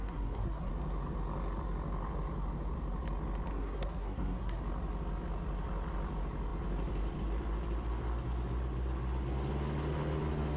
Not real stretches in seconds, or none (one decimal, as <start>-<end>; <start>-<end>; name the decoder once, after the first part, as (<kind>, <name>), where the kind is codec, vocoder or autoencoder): 0.0-0.7 (codec, SNAC); 3.5-4.6